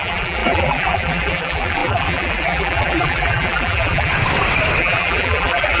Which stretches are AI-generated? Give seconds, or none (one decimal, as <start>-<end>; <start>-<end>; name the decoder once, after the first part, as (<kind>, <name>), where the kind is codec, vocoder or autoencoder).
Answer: 0.0-4.1 (vocoder, BigVGAN v2); 4.8-5.8